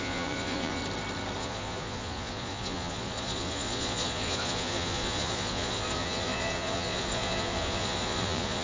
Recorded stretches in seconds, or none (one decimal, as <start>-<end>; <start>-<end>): 0.8-1.4